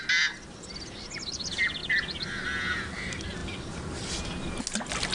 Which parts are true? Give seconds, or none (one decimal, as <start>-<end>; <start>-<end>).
0.0-5.1